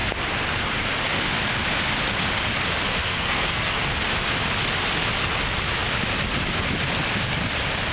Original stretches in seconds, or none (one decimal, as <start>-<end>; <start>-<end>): 0.0-3.0; 3.9-7.9